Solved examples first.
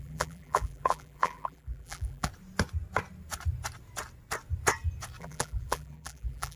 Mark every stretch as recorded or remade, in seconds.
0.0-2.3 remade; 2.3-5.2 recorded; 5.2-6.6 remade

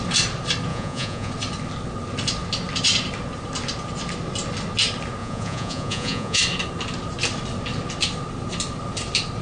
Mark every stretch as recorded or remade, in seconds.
0.0-0.7 recorded; 0.7-1.3 remade; 1.3-5.2 recorded; 5.2-6.4 remade; 6.4-9.4 recorded

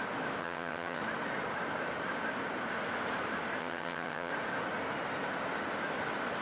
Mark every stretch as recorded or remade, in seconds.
0.0-0.4 recorded; 0.4-1.0 remade; 1.0-3.6 recorded; 3.6-4.3 remade; 4.3-6.4 recorded

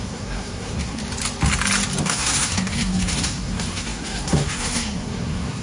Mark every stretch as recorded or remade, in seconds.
0.0-1.0 remade; 1.0-2.0 recorded; 2.0-5.6 remade